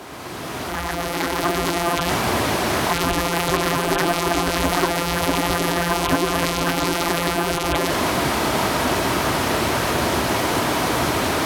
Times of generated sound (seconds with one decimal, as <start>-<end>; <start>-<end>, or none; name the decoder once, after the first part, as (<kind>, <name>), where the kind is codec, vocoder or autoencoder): 0.7-2.1 (vocoder, BigVGAN v2); 2.9-7.9